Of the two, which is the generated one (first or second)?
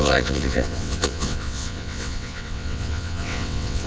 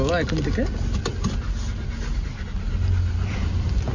first